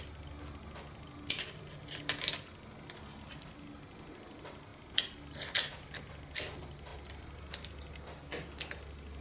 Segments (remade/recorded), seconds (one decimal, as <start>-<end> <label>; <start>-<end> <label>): 0.0-9.2 recorded